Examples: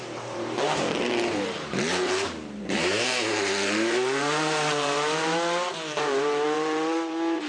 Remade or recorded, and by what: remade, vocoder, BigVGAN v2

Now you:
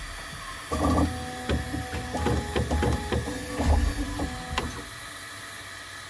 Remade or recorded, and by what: recorded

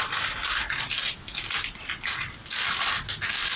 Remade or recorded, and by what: recorded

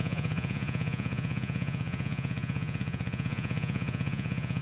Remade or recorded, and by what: remade, vocoder, Vocos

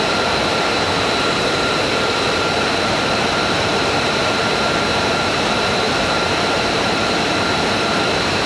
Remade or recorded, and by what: remade, vocoder, BigVGAN v2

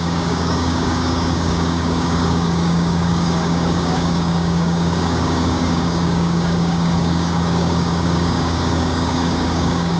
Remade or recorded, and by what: remade, codec, DAC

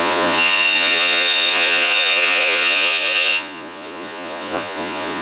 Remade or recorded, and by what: remade, vocoder, Vocos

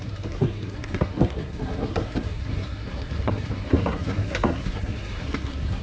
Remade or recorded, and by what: remade, codec, SNAC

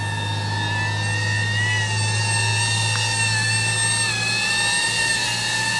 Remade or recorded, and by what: recorded